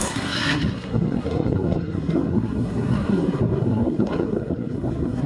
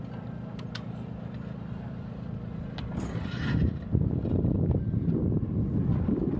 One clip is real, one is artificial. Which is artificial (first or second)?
first